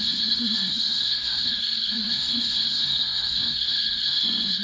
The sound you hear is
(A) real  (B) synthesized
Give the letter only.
B